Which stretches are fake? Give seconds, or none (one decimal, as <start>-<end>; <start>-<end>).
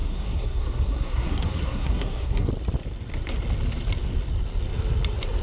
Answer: 0.0-2.5